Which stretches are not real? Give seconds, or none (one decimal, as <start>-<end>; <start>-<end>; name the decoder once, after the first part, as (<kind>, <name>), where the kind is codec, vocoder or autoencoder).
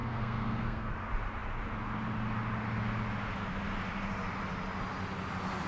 0.0-0.9 (codec, SNAC)